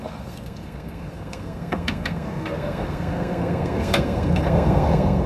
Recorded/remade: remade